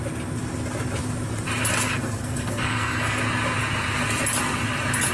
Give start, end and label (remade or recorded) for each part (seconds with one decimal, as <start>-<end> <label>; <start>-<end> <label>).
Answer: 0.0-1.8 recorded; 1.8-3.2 remade; 3.2-5.1 recorded